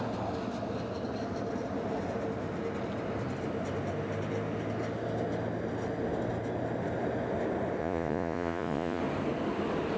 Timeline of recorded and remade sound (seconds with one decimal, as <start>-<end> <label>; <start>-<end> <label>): 0.0-7.8 recorded; 7.8-9.0 remade; 9.0-10.0 recorded